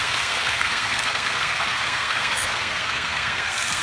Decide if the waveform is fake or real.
fake